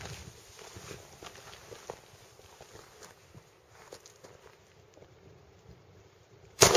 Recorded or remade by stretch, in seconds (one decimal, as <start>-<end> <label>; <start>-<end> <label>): 0.0-5.0 recorded; 5.0-6.8 remade